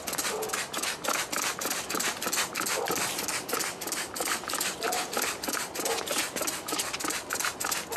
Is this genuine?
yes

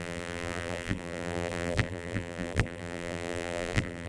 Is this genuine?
no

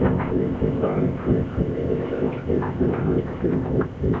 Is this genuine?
no